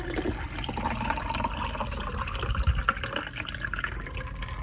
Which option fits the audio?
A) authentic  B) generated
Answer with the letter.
A